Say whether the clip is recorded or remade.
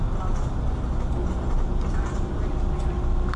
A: recorded